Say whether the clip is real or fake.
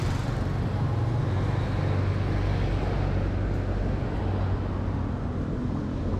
real